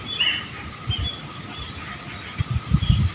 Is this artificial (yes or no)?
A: no